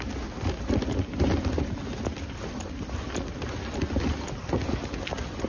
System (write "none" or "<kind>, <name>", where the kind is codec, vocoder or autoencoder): none